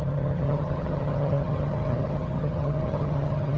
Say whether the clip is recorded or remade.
remade